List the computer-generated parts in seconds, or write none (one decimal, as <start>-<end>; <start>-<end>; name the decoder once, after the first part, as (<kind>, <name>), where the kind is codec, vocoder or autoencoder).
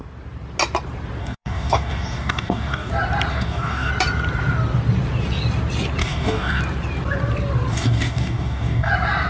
1.2-2.9 (codec, DAC); 3.3-3.9; 6.0-6.6; 7.7-8.9